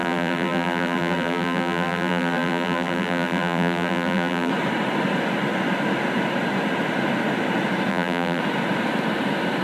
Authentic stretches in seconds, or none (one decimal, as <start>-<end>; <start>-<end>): 4.5-7.9; 8.4-9.6